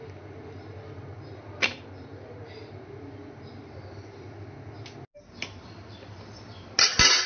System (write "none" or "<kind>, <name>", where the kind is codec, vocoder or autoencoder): none